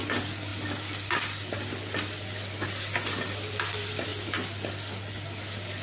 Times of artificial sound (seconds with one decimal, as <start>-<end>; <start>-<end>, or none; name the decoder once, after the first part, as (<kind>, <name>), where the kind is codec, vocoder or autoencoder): none